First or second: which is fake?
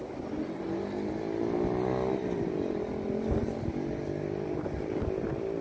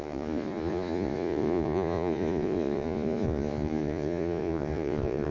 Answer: second